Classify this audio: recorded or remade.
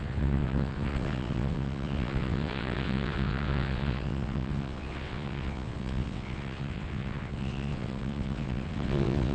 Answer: remade